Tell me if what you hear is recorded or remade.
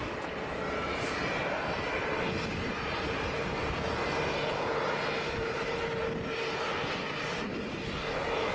recorded